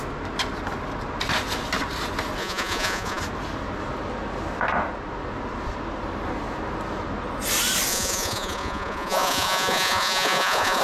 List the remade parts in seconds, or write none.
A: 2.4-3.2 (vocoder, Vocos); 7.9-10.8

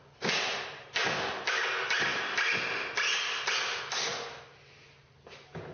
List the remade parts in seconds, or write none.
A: none

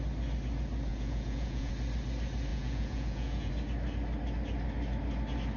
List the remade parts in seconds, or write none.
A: 0.9-1.7 (vocoder, Vocos); 2.5-3.5

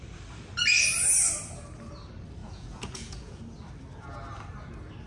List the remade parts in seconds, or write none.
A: 2.4-3.4 (vocoder, Vocos)

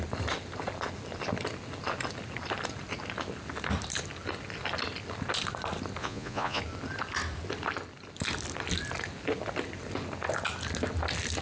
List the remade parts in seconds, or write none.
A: 6.0-6.6 (vocoder, Vocos)

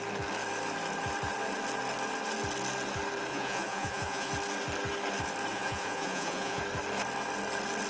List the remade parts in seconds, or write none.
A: 3.3-4.3 (vocoder, Vocos); 5.5-6.6

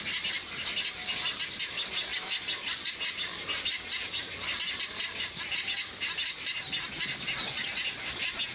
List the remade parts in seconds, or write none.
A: none

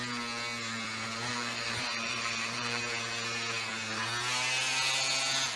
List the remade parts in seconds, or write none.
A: 1.3-2.8 (vocoder, Vocos)